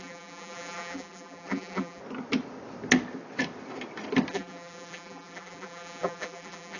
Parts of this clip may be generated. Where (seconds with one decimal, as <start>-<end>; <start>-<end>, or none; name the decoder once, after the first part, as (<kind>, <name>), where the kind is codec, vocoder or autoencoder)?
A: 0.0-2.0 (vocoder, BigVGAN v2); 4.3-6.8